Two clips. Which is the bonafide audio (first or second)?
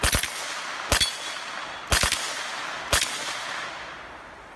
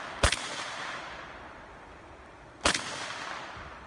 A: first